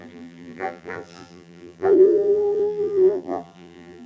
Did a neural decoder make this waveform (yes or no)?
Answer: yes